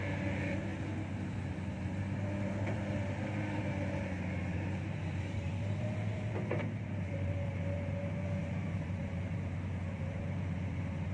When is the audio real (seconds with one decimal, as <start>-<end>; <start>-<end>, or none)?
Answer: 0.7-4.4